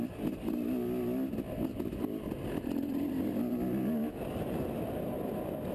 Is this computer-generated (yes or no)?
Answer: no